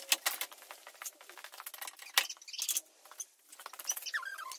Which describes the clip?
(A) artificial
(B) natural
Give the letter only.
B